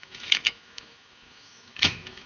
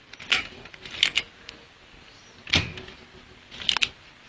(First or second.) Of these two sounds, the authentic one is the second